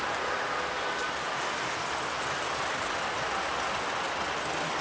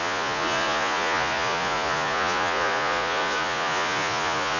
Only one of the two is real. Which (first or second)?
first